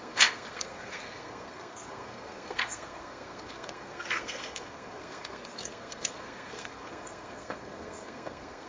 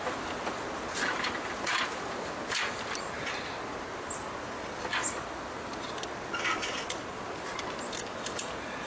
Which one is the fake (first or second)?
first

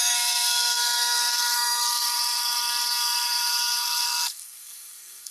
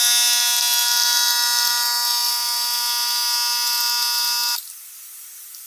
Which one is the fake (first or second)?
first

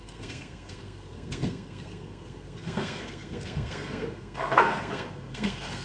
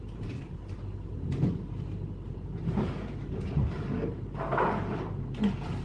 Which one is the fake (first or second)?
first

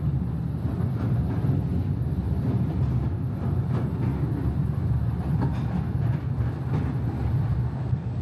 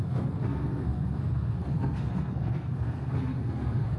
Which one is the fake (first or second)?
second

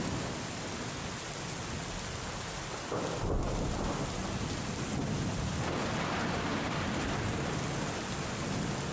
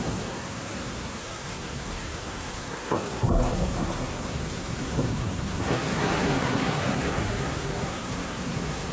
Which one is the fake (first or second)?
second